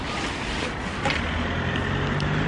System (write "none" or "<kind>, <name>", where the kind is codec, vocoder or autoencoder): none